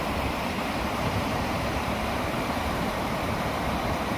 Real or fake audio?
fake